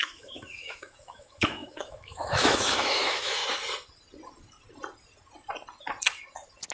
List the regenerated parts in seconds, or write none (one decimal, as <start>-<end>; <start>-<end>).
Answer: 0.0-3.4